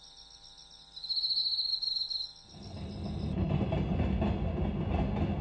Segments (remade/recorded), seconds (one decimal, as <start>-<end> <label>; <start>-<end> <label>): 0.0-5.4 recorded